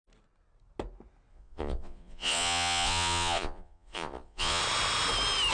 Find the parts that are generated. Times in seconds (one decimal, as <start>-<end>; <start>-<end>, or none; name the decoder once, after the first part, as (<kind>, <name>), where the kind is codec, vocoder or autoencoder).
1.3-4.6 (vocoder, Vocos)